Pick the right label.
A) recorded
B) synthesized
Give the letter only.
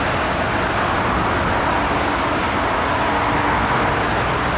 A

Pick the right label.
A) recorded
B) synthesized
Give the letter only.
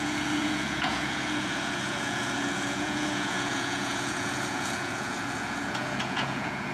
B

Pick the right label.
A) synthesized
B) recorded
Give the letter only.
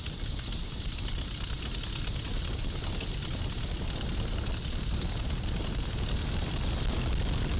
B